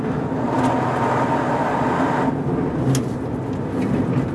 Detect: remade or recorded recorded